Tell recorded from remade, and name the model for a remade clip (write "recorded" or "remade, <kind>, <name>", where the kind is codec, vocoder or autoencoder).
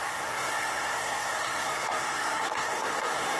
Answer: remade, codec, SNAC